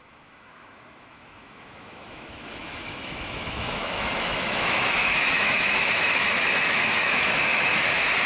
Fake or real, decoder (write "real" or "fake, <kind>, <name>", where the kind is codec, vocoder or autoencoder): fake, autoencoder, DAC-VAE